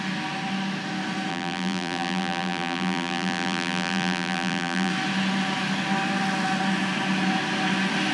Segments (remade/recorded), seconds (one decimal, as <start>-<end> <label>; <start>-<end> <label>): 0.0-1.3 recorded; 1.3-4.9 remade; 4.9-8.1 recorded